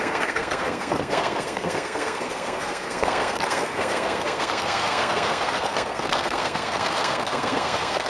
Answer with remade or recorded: remade